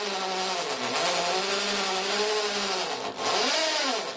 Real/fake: real